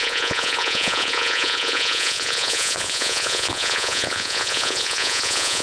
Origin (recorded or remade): remade